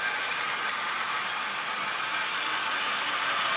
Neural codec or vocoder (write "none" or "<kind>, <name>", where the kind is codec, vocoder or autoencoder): none